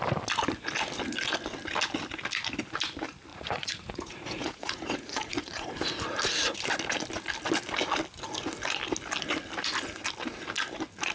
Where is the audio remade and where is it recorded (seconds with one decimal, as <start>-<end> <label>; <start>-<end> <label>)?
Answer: 0.0-3.3 recorded; 3.3-5.7 remade; 5.7-11.1 recorded